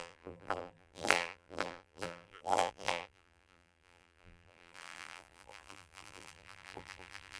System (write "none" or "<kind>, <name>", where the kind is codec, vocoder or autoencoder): vocoder, BigVGAN v2